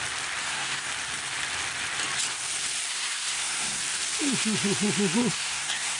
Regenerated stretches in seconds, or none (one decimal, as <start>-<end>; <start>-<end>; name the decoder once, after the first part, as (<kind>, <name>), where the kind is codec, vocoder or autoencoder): 0.4-0.9 (codec, SNAC); 2.9-3.8; 5.3-6.0